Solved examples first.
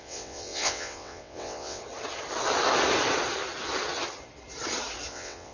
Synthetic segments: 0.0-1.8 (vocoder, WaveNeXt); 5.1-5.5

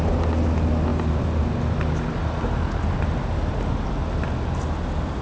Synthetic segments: none

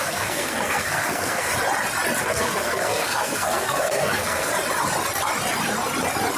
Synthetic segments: 0.0-1.5 (codec, SNAC); 2.2-4.5

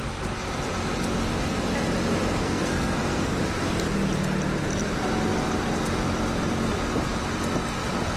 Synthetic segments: 2.4-3.4 (codec, SNAC)

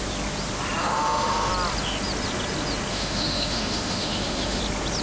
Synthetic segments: 0.8-1.5 (autoencoder, DAC-VAE); 2.9-4.6

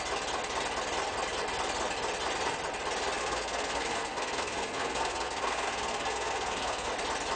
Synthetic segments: 3.2-6.9 (codec, SNAC)